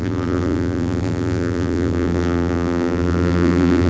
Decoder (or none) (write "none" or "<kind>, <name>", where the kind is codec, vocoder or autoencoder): vocoder, BigVGAN v2